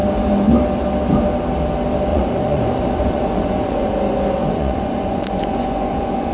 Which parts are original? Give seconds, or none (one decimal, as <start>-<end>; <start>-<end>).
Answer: 0.0-2.1; 3.9-4.4

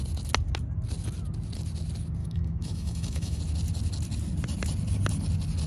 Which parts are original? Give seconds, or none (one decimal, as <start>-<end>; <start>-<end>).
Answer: 0.0-2.2; 3.4-5.7

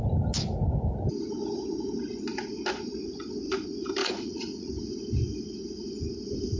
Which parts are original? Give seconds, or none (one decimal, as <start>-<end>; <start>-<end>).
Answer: 0.0-4.0; 4.7-6.6

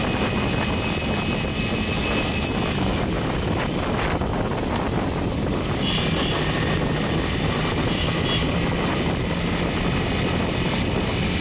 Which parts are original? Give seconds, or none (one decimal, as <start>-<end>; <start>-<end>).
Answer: 0.0-2.9; 3.6-11.4

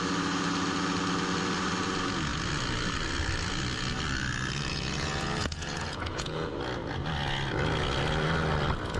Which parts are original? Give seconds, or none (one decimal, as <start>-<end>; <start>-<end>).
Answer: 0.0-4.7; 6.5-9.0

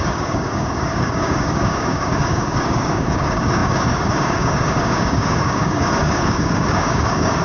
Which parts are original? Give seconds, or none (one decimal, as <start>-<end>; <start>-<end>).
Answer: none